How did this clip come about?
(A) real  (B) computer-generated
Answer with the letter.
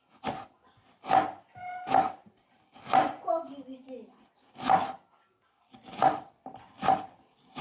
A